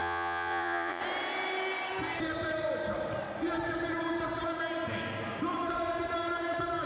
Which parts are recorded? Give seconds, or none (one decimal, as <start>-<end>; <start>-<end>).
1.0-6.9